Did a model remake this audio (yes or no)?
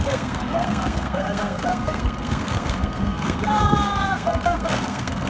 yes